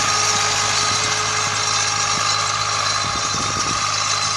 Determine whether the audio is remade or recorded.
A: recorded